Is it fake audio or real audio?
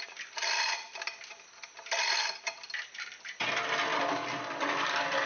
real